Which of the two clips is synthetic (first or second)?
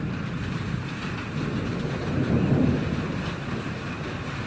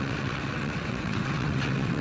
second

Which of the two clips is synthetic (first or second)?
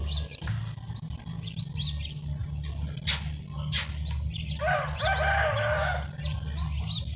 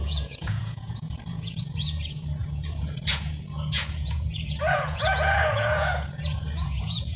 second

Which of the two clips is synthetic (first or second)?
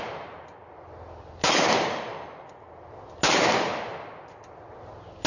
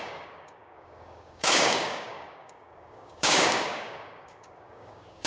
second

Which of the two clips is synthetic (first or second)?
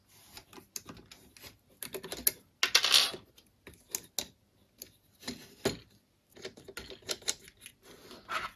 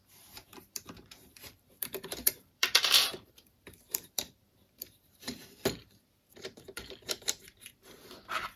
second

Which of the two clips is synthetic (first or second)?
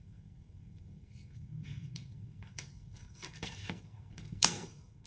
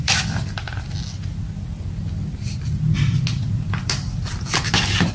first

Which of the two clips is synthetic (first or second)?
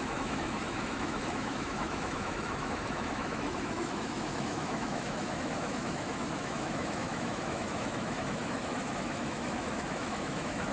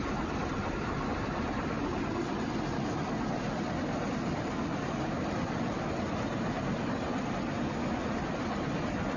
first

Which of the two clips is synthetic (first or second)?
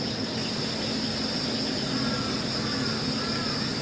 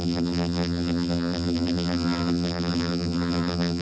second